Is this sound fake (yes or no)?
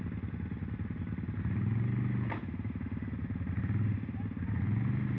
no